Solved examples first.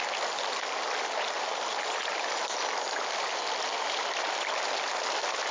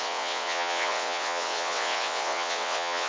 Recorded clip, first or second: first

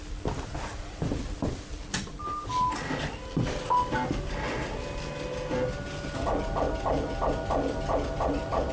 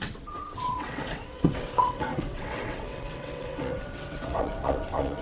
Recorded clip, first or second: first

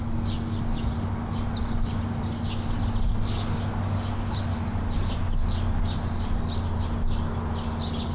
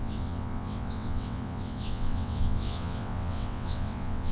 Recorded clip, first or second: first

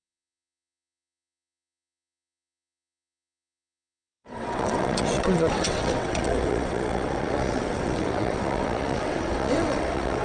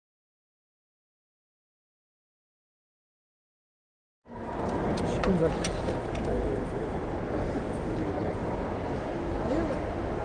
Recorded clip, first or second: second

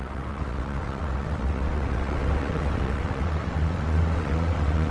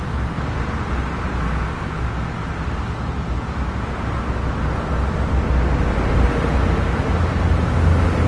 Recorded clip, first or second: second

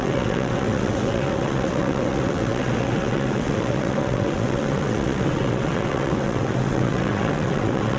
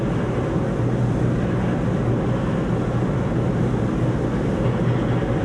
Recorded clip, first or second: second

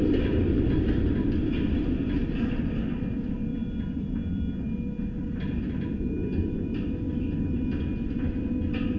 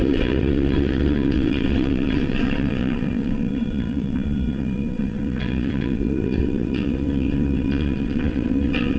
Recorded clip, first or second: first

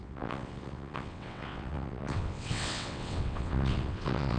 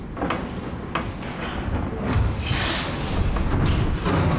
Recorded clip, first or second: second